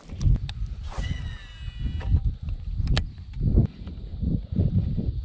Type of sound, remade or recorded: recorded